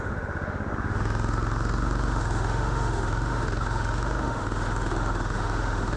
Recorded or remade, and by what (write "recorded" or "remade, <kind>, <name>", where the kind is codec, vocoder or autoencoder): remade, autoencoder, DAC-VAE